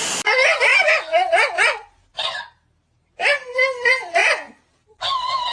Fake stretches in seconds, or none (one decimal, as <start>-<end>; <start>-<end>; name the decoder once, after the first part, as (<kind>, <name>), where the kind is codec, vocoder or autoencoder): none

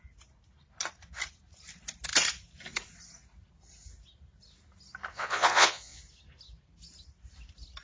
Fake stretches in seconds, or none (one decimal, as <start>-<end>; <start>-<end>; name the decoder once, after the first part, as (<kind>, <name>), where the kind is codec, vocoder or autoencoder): 5.1-6.0 (vocoder, Vocos)

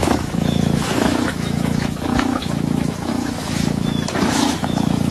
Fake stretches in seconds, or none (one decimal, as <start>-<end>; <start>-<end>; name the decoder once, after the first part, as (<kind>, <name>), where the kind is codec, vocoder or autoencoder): 0.0-5.1 (autoencoder, DAC-VAE)

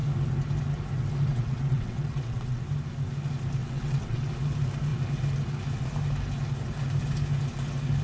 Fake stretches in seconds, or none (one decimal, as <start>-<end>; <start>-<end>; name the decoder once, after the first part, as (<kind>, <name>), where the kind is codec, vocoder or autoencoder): 1.3-2.6 (vocoder, WaveNeXt); 3.6-4.3

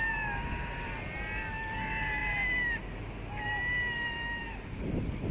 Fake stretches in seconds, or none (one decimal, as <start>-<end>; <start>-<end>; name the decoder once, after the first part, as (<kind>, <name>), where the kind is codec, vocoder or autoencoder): none

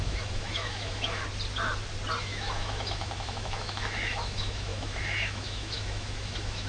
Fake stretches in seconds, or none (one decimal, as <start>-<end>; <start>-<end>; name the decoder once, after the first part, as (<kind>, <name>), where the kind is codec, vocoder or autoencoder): 0.0-1.2 (autoencoder, DAC-VAE); 2.2-6.7